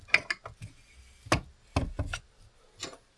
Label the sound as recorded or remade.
recorded